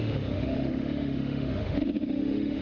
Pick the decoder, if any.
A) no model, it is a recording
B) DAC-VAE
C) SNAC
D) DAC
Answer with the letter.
B